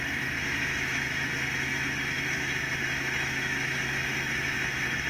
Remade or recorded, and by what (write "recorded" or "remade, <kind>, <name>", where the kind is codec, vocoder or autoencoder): remade, autoencoder, DAC-VAE